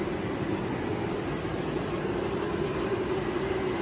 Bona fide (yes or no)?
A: yes